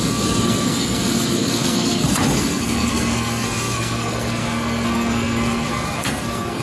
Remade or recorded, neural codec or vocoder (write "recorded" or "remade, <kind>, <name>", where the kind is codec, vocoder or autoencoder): remade, codec, SNAC